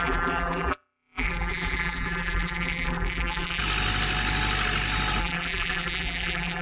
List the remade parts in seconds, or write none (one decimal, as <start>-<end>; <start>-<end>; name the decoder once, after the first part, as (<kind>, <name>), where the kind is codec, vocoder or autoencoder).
0.0-3.6 (vocoder, BigVGAN v2); 5.2-6.6